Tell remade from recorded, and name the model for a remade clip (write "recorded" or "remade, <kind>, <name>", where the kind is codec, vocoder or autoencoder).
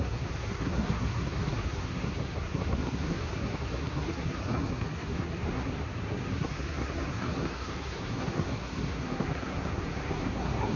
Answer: remade, codec, SNAC